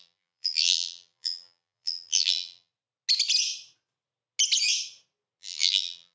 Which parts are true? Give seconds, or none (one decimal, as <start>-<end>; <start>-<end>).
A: 2.7-5.4